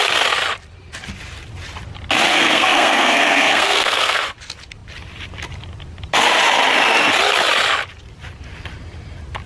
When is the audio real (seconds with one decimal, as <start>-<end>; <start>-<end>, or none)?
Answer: 0.0-2.3; 4.3-9.5